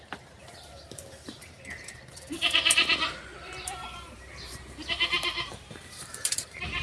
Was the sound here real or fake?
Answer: fake